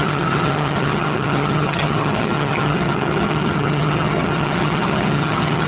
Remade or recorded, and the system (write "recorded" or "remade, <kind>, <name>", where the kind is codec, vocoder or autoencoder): remade, vocoder, HiFi-GAN